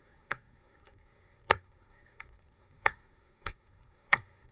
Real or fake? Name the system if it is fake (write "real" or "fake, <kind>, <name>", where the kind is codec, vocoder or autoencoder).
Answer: fake, codec, SNAC